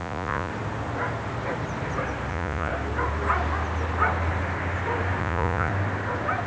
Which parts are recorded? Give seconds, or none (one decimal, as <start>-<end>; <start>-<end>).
0.5-2.3; 2.7-5.2; 5.7-6.5